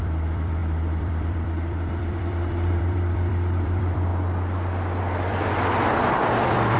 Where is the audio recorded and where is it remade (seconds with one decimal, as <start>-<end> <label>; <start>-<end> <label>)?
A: 0.0-4.1 remade; 4.1-5.0 recorded; 5.0-6.8 remade